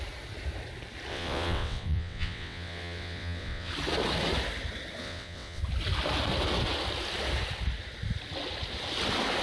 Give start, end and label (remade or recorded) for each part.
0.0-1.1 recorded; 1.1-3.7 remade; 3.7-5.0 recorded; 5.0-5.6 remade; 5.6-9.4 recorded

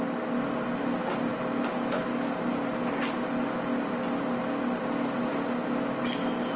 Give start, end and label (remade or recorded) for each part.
0.0-6.6 recorded

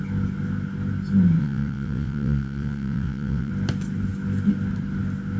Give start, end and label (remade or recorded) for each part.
0.0-1.4 recorded; 1.4-3.5 remade; 3.5-5.4 recorded

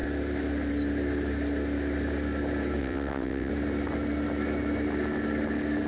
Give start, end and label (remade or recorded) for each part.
0.0-2.8 recorded; 2.8-3.5 remade; 3.5-5.9 recorded